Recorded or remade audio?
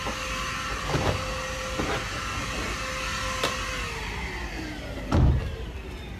recorded